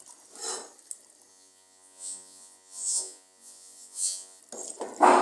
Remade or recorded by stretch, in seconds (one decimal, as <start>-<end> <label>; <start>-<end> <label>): 0.0-1.3 recorded; 1.3-4.4 remade; 4.4-5.2 recorded